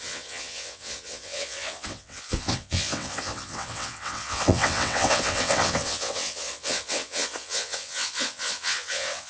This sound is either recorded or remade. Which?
remade